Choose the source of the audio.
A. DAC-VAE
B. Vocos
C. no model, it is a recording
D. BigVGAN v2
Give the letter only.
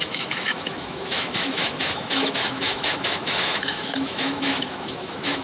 A